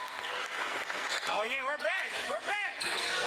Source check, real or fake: fake